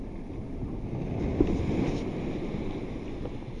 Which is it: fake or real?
real